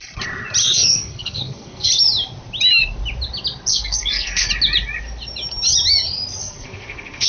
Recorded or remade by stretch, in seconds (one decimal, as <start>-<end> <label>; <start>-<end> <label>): 0.0-0.6 recorded; 0.6-1.9 remade; 1.9-3.7 recorded; 3.7-4.5 remade; 4.5-6.4 recorded; 6.4-7.3 remade